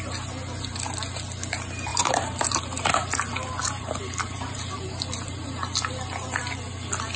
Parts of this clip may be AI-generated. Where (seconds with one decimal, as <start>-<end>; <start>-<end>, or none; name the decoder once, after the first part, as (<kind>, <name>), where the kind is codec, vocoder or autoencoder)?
1.9-2.8 (vocoder, BigVGAN v2); 3.6-4.8